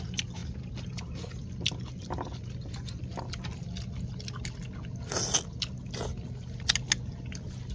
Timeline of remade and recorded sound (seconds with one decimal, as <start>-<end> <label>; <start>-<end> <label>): 0.0-7.7 recorded